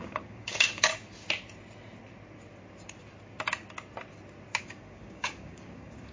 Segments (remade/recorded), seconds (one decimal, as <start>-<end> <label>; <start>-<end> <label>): 0.0-0.9 remade; 0.9-4.6 recorded; 4.6-6.1 remade